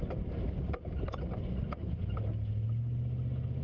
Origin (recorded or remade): recorded